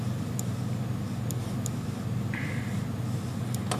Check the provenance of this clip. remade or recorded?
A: recorded